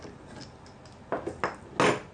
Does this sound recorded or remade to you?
recorded